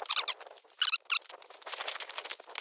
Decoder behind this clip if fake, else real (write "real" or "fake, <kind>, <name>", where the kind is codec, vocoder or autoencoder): real